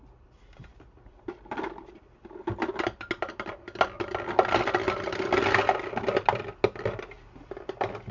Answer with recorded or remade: recorded